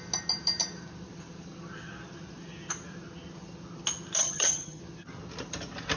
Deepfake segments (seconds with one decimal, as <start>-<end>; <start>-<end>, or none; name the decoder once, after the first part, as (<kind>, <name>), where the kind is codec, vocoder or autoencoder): 4.2-4.8 (vocoder, HiFi-GAN)